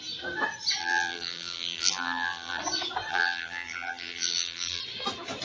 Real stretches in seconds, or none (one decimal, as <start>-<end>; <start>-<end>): 0.0-0.8; 2.6-3.1; 4.8-5.4